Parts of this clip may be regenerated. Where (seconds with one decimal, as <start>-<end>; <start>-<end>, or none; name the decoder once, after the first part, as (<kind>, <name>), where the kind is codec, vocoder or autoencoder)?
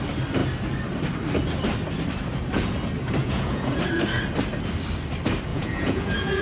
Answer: 3.2-3.8 (vocoder, Vocos); 5.5-6.4